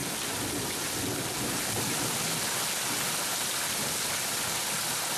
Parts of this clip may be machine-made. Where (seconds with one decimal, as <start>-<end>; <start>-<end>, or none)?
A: none